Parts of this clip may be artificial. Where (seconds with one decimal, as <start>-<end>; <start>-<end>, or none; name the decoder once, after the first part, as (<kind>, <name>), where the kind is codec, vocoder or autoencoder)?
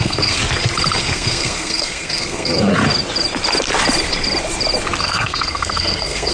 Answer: 0.0-0.4 (codec, SNAC); 1.0-2.7; 5.0-6.3